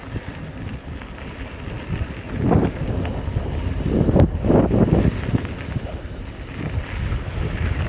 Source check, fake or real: real